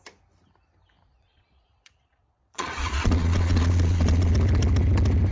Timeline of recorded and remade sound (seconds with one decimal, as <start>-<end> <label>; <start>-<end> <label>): 0.0-1.1 recorded; 1.1-4.3 remade; 4.3-5.3 recorded